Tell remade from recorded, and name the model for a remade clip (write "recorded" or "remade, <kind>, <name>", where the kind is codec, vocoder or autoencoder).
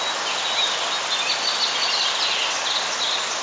recorded